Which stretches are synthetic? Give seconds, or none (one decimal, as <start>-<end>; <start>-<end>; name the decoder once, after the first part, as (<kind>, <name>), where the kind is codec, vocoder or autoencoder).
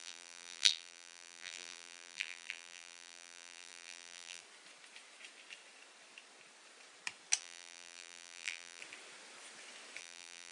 0.0-4.4 (vocoder, BigVGAN v2); 7.4-8.8; 10.0-10.5